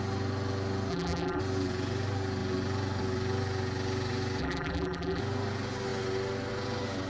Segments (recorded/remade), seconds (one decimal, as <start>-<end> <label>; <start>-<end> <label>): 0.0-0.9 recorded; 0.9-1.4 remade; 1.4-4.4 recorded; 4.4-5.2 remade; 5.2-7.1 recorded